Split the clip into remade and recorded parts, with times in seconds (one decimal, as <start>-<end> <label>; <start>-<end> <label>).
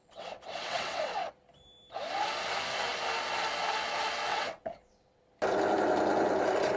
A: 0.0-1.3 remade; 1.3-4.3 recorded; 4.3-5.2 remade; 5.2-6.8 recorded